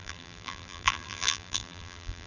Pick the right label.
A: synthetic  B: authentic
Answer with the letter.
A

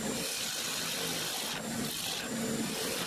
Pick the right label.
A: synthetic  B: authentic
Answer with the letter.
B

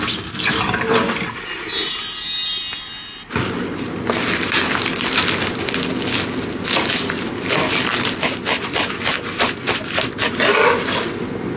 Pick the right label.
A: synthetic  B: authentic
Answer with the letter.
B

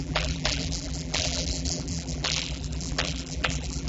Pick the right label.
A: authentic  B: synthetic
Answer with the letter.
B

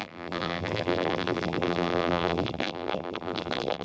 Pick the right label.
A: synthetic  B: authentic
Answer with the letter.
A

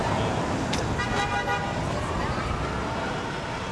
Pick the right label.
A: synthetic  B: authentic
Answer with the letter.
B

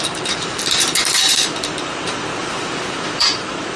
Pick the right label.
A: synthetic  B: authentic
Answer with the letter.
A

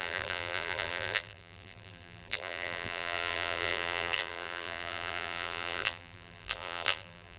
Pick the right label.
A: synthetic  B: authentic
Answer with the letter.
A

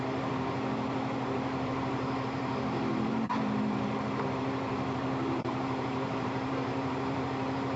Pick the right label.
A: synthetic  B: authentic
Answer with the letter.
A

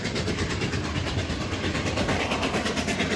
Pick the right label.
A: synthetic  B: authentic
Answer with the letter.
A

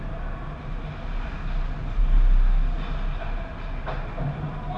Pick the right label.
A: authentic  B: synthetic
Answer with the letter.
A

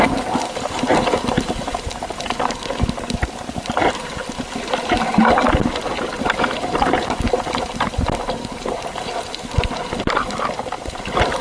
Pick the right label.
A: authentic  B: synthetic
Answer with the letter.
A